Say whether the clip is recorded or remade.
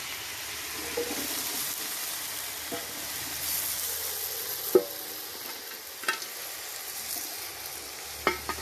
recorded